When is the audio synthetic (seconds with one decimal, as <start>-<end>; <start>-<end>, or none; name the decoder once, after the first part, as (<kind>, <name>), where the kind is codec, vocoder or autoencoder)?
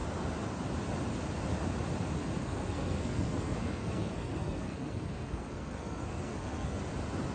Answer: 2.4-6.8 (codec, SNAC)